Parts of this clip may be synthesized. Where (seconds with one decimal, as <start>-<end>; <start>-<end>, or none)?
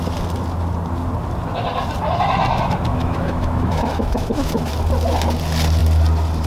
2.9-4.7